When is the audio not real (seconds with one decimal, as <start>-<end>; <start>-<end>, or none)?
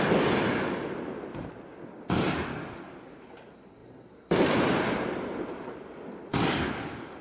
3.8-6.0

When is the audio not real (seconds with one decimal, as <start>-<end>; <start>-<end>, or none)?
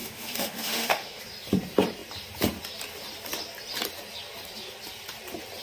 0.0-1.2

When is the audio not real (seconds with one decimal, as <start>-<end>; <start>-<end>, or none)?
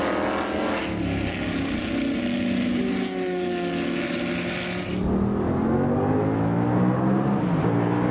none